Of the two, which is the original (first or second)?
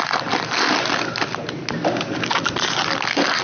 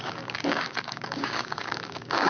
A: first